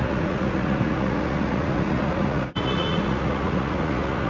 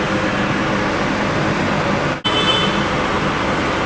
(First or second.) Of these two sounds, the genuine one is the second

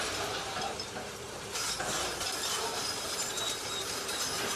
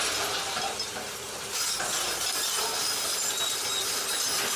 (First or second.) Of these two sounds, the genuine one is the second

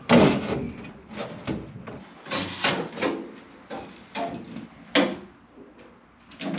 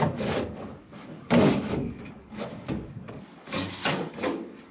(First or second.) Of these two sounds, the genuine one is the first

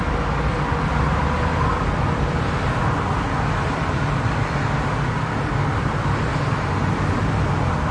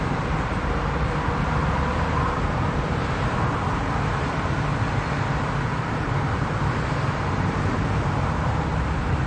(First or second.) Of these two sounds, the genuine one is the first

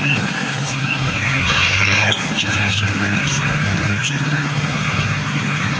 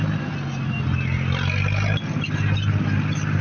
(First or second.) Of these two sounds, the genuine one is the second